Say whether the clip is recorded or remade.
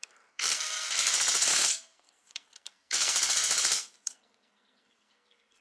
remade